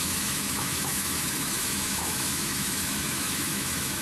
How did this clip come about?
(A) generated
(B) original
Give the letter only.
A